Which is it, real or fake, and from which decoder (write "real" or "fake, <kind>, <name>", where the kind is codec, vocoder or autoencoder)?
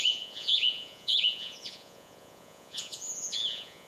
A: fake, vocoder, Vocos